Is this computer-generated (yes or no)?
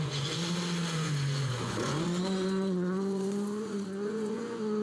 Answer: yes